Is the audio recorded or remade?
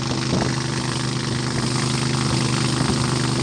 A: recorded